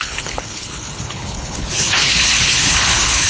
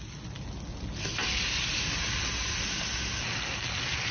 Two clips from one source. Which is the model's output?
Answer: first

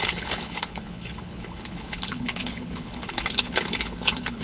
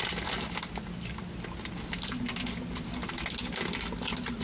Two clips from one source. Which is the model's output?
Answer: first